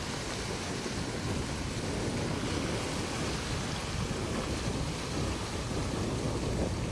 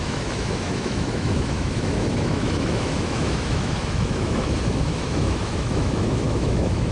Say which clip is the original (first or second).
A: first